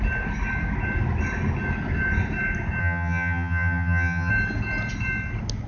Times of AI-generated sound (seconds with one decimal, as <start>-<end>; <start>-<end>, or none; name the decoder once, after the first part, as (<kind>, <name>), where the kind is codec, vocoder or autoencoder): 2.8-4.3 (vocoder, HiFi-GAN)